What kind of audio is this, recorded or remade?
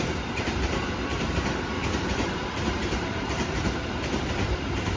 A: remade